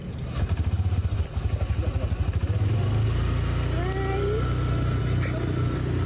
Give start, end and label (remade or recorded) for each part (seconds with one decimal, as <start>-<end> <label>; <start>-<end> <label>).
0.0-6.1 recorded